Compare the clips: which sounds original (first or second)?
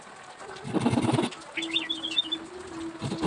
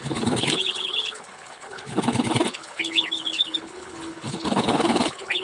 first